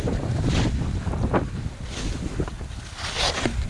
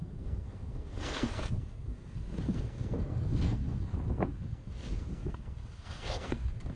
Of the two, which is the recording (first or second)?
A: first